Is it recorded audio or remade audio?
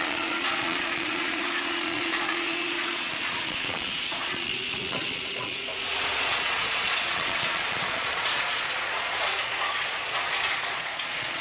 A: remade